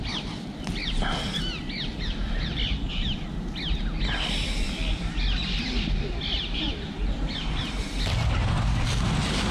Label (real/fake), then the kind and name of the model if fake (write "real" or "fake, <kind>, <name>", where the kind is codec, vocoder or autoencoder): real